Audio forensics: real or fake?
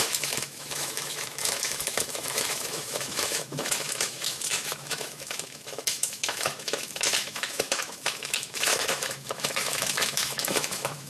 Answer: fake